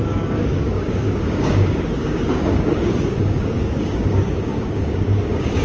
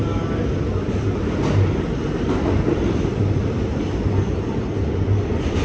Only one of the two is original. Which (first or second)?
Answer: second